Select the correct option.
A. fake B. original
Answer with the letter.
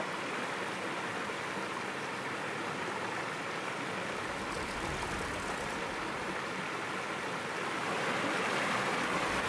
B